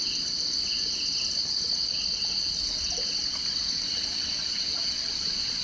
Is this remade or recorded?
recorded